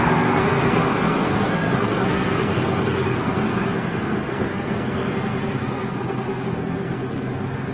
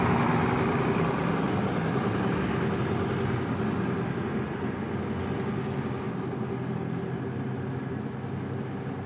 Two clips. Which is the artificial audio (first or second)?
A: first